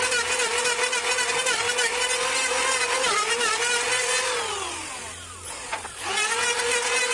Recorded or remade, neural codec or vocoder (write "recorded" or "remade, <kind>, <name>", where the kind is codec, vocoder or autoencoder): recorded